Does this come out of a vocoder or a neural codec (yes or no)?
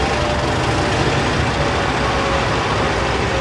no